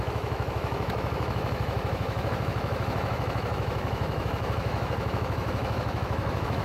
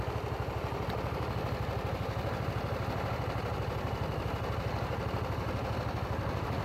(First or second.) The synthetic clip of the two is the first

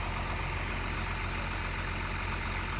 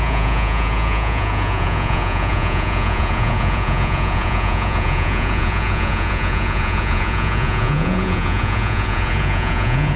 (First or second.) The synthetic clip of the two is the second